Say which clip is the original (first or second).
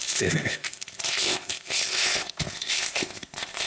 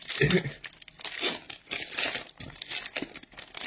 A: second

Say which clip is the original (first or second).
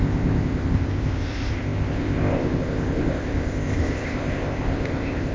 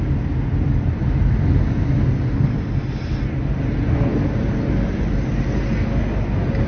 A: second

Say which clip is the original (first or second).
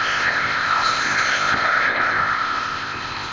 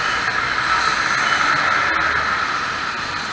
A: second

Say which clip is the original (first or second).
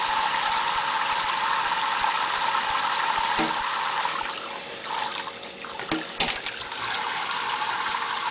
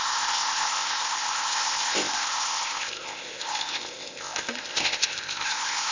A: first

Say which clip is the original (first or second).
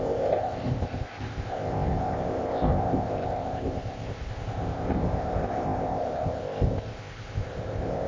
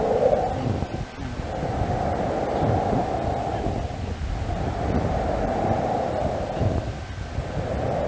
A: second